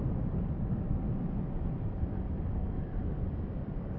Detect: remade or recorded remade